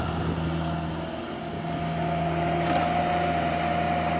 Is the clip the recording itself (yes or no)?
yes